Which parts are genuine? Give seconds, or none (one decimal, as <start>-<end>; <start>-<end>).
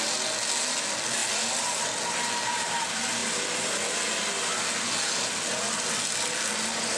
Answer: 0.0-7.0